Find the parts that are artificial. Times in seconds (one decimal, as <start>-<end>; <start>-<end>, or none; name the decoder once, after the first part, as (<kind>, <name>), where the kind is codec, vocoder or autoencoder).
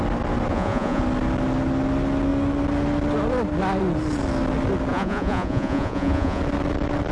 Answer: 0.5-1.0 (vocoder, Vocos); 4.9-6.4